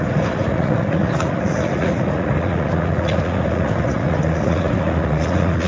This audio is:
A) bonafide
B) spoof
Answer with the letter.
B